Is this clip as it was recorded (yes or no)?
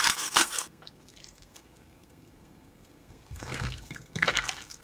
no